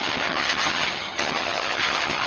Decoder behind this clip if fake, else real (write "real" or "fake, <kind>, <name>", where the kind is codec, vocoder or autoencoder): fake, vocoder, HiFi-GAN